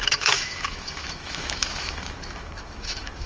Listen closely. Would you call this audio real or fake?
fake